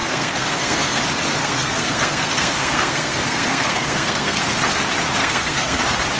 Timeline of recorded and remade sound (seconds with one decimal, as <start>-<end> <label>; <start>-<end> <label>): 0.0-1.0 remade; 1.0-1.4 recorded; 1.4-4.4 remade; 4.4-5.2 recorded; 5.2-5.8 remade; 5.8-6.2 recorded